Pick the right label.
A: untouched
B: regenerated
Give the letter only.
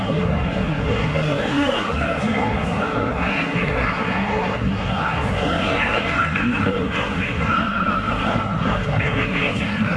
B